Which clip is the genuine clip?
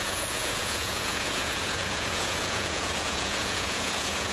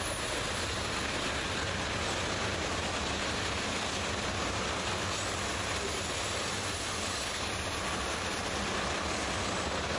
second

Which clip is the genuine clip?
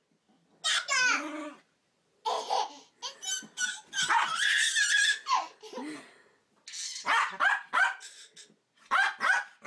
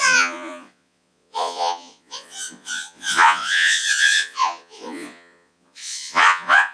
first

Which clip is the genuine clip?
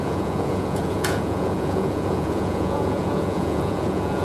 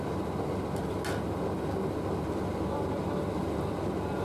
second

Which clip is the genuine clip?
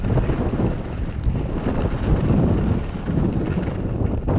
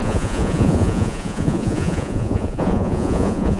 first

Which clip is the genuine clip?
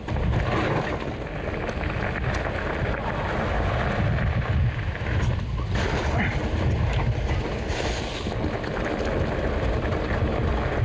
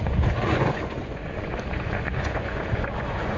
first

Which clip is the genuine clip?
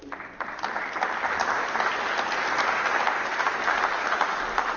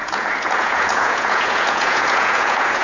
first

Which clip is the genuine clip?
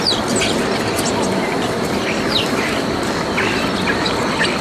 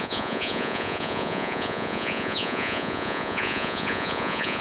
first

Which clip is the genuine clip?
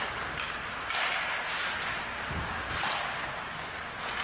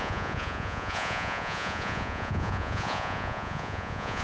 first